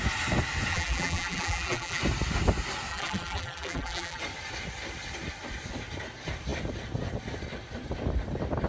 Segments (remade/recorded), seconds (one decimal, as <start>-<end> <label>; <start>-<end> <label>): 0.0-0.7 recorded; 0.7-2.0 remade; 2.0-2.9 recorded; 2.9-4.2 remade; 4.2-8.7 recorded